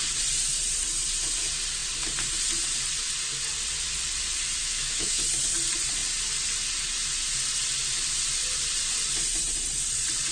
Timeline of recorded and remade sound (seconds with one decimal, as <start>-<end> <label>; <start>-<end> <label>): 0.0-4.6 recorded; 4.6-5.2 remade; 5.2-10.3 recorded